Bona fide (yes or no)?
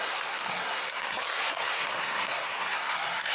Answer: no